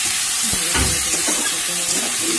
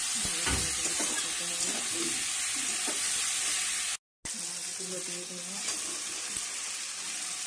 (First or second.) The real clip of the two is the second